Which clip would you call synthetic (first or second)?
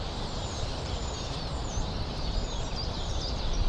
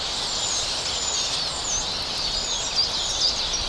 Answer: first